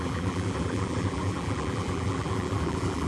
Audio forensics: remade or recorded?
remade